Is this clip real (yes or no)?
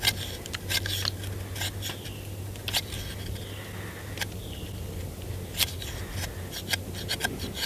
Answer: yes